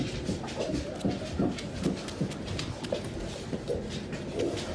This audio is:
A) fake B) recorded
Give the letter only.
B